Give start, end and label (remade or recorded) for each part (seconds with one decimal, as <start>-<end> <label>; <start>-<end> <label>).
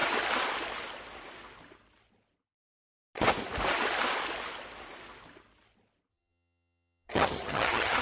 0.0-6.1 recorded; 6.1-8.0 remade